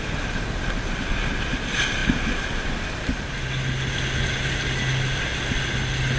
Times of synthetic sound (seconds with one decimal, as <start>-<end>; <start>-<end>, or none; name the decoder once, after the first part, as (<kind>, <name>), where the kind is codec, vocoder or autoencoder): none